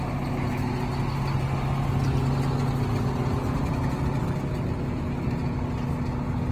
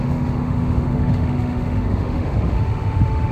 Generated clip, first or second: second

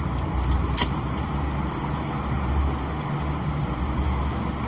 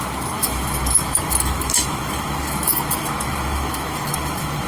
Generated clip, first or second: second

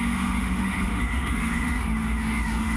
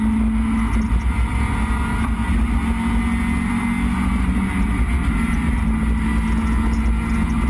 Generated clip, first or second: first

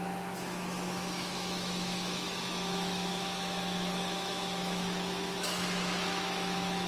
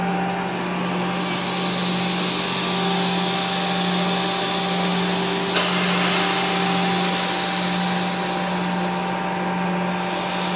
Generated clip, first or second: first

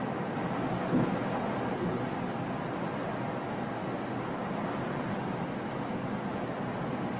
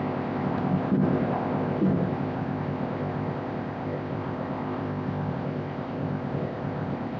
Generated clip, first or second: second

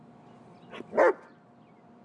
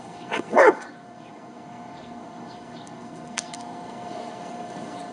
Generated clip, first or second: second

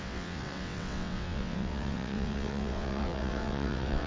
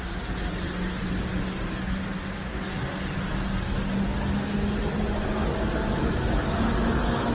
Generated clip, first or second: first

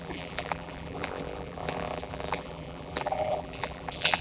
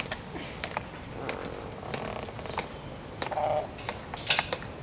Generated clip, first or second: first